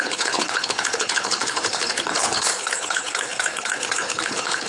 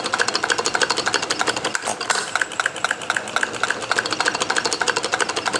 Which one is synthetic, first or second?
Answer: first